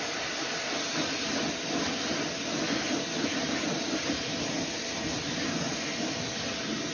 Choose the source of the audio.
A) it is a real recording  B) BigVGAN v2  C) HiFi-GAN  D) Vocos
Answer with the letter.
A